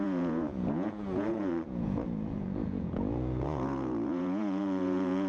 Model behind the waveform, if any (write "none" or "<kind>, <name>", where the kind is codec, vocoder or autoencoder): vocoder, Vocos